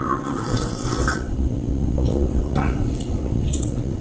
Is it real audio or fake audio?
fake